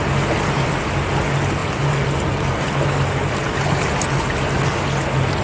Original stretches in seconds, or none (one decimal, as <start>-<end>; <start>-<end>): 0.0-5.4